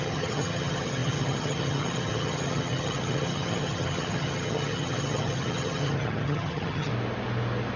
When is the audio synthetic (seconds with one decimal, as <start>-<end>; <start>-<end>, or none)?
0.0-6.9